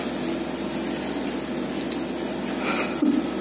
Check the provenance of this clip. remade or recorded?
recorded